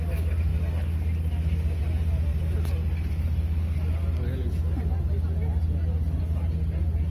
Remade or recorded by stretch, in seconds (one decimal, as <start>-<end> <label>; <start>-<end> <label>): 0.0-7.1 recorded